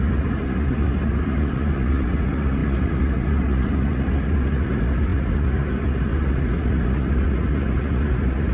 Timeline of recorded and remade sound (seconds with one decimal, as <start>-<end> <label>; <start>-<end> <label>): 0.0-8.5 remade